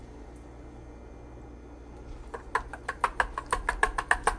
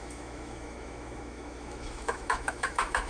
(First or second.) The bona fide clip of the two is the first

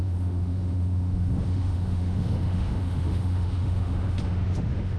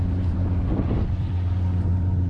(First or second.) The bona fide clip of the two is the second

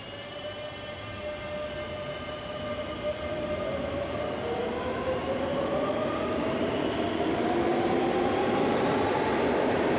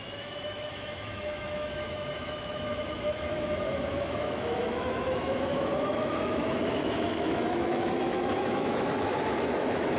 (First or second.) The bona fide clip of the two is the first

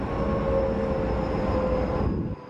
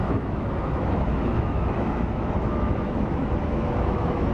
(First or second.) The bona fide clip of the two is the first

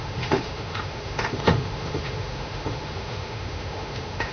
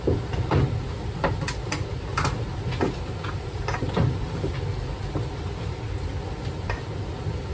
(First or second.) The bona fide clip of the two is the second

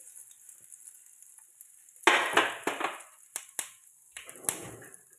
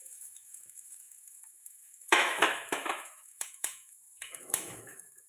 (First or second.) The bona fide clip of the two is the first